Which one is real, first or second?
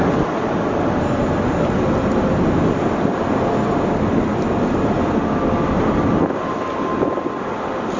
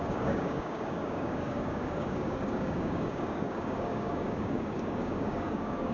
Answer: first